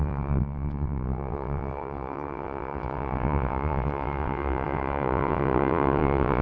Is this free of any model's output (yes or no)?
no